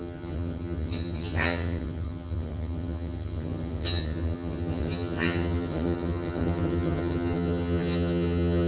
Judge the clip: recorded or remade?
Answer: remade